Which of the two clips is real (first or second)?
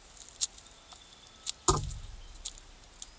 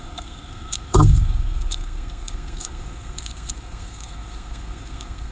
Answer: first